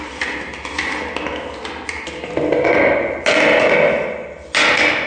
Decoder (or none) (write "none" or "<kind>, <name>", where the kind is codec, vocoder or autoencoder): none